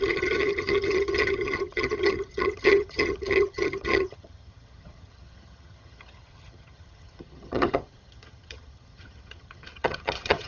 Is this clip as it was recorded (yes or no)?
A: no